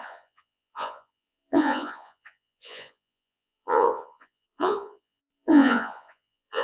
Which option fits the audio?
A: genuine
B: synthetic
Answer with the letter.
B